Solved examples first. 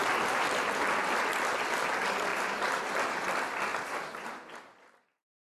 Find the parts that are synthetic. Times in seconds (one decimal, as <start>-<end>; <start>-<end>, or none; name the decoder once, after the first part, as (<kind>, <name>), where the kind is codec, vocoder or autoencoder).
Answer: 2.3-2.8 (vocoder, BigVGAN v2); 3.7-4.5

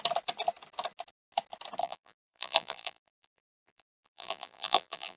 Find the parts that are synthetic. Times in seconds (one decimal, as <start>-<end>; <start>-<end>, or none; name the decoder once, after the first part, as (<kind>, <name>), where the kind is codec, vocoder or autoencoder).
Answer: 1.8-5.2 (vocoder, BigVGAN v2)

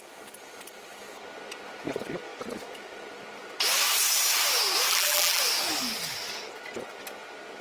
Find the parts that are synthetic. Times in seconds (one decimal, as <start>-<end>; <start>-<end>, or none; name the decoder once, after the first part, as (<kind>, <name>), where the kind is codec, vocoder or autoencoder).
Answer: 4.9-5.4 (vocoder, BigVGAN v2)